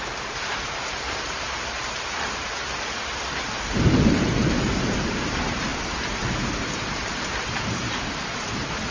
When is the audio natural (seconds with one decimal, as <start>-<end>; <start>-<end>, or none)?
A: none